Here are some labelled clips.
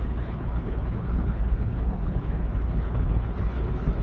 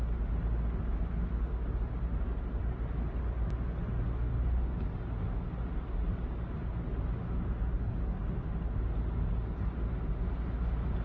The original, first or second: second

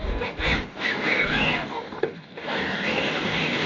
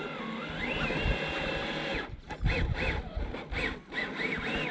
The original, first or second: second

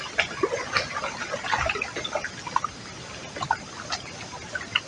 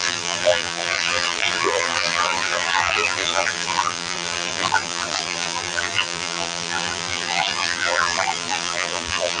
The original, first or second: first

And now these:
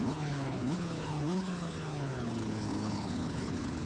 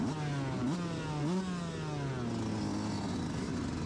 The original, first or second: second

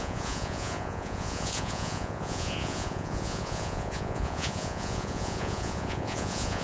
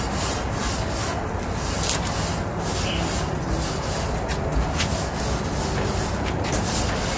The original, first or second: second